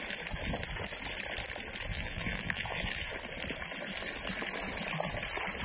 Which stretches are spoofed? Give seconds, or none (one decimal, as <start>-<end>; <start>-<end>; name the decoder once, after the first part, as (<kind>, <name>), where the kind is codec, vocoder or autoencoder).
1.9-3.1 (vocoder, BigVGAN v2)